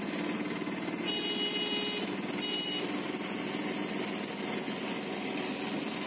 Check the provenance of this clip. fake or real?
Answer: real